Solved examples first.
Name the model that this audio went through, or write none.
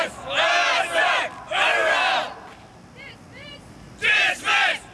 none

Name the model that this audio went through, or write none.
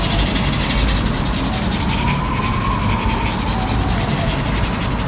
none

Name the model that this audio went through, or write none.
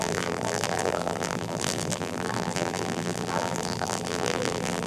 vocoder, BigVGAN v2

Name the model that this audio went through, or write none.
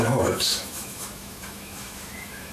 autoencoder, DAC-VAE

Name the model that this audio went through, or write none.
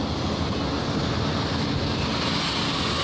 none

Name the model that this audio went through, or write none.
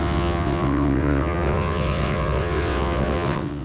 vocoder, WaveNeXt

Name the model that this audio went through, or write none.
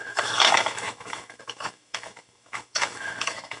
autoencoder, DAC-VAE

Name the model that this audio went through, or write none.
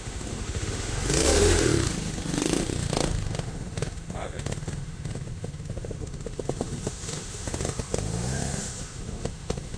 autoencoder, DAC-VAE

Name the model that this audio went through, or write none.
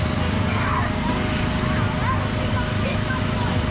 none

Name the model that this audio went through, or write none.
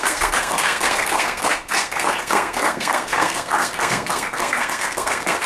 codec, SNAC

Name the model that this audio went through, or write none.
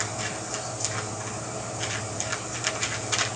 none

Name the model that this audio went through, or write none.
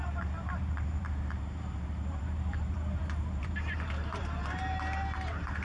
vocoder, BigVGAN v2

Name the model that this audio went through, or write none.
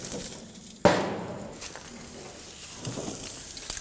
none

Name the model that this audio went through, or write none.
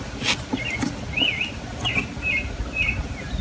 none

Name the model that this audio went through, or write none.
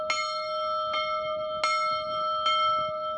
none